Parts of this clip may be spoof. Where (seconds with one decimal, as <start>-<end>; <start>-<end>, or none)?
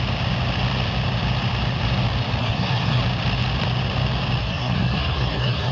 2.4-3.0; 4.4-5.7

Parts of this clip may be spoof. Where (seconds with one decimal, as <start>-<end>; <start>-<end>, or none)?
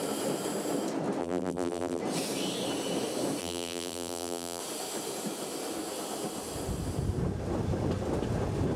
1.2-2.0; 3.4-4.6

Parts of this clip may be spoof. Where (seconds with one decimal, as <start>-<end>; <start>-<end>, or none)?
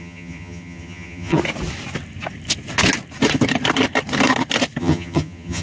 0.0-1.4; 4.8-5.6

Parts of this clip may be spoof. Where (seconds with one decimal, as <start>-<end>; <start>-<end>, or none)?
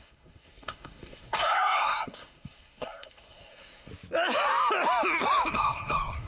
0.0-3.9; 5.5-6.3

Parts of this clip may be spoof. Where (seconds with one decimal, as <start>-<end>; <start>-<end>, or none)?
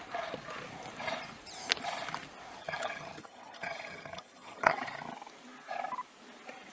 2.6-4.8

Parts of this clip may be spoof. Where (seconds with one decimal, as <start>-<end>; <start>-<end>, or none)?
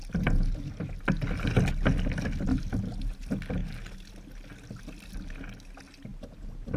none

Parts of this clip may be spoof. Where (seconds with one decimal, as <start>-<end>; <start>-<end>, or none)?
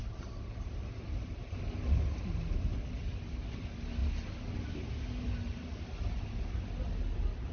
none